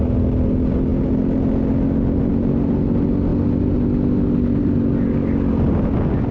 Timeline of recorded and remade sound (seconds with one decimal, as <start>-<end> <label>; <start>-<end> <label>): 0.0-6.3 recorded